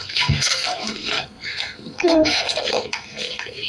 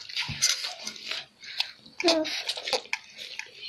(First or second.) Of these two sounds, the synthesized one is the first